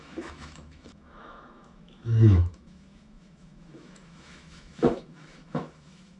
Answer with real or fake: fake